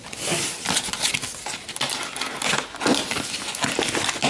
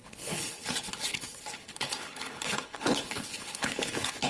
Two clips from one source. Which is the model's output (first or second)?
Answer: second